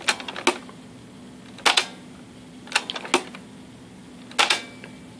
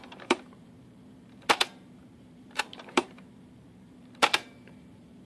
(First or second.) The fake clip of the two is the second